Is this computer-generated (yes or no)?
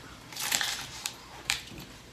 yes